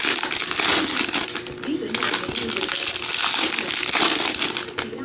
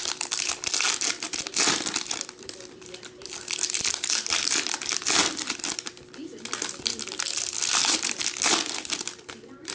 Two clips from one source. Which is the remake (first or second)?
second